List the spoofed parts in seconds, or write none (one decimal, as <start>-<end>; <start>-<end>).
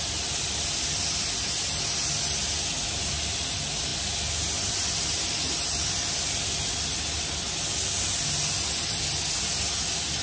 none